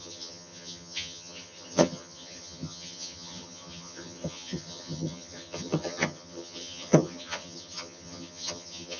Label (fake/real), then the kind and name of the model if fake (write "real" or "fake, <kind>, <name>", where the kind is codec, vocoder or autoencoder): fake, vocoder, HiFi-GAN